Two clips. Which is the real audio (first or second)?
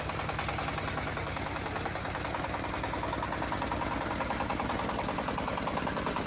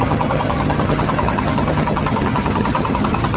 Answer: first